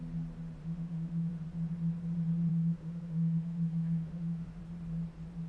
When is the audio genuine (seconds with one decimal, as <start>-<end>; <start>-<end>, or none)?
0.0-0.6; 1.3-2.5; 4.6-5.5